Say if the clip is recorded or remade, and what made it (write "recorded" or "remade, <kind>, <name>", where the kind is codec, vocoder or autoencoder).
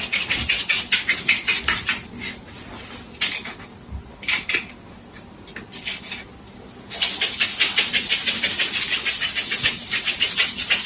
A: recorded